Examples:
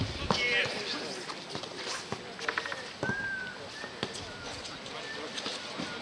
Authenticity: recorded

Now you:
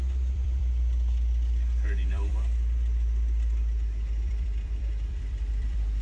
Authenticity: remade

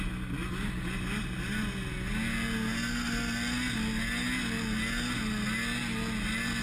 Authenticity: recorded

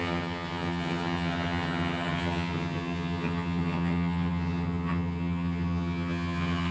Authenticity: remade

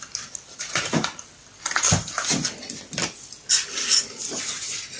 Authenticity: recorded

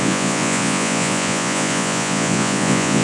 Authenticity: remade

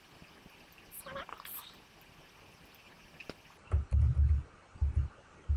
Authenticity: recorded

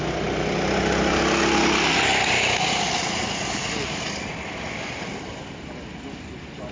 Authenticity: recorded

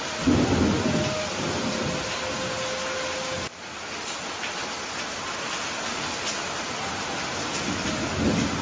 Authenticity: recorded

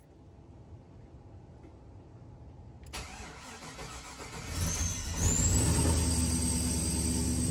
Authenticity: recorded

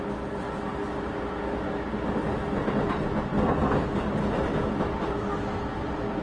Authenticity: recorded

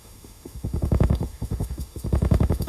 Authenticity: remade